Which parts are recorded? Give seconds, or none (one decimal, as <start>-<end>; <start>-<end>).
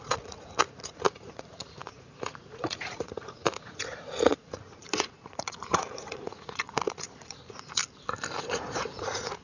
7.8-8.4